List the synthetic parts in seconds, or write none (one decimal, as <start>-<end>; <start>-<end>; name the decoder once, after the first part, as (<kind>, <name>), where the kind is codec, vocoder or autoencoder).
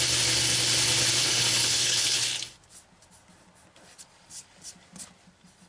1.2-2.2 (codec, HILCodec)